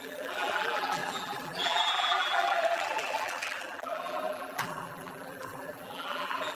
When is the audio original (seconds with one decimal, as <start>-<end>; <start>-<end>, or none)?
none

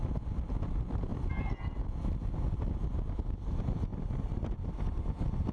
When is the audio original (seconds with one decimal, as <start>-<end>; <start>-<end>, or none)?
0.0-1.1; 1.6-3.9; 5.1-5.5

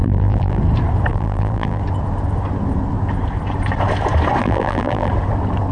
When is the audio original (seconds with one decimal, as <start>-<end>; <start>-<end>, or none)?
0.6-1.1; 1.8-4.4; 5.1-5.7

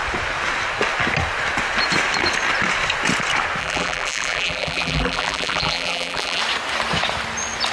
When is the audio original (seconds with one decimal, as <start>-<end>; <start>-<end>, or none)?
0.0-3.6; 6.4-7.7